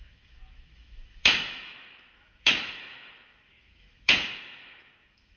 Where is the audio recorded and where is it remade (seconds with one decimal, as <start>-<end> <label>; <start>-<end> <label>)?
0.0-5.4 remade